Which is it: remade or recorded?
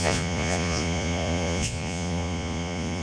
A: remade